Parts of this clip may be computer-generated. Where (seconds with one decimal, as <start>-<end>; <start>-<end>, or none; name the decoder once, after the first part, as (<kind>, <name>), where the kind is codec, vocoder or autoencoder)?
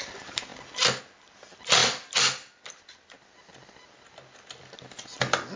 none